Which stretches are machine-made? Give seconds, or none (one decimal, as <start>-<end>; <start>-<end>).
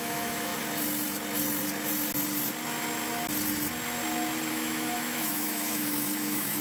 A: 0.0-0.5; 4.5-6.6